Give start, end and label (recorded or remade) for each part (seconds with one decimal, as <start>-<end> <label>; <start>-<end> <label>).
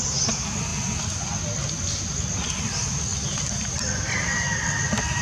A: 0.0-5.2 recorded